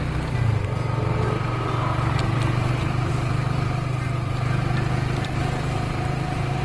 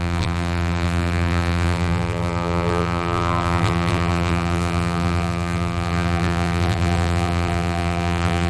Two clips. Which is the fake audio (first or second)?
second